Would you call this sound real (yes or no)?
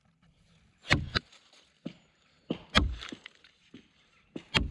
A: yes